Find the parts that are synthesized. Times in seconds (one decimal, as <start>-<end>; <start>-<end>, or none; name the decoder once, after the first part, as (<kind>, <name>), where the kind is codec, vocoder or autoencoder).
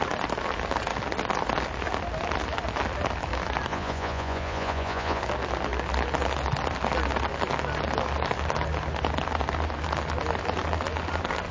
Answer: 3.7-5.2 (vocoder, Vocos)